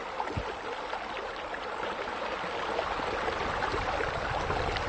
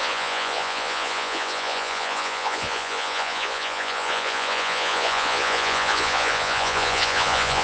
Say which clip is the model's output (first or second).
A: second